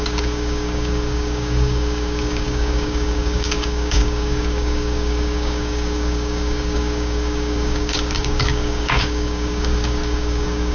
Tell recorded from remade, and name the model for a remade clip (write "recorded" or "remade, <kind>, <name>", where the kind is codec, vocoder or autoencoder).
remade, codec, DAC